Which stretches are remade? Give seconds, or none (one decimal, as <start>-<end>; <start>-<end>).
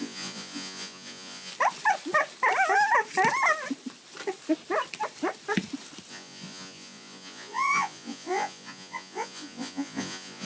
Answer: 0.0-1.5; 6.1-10.4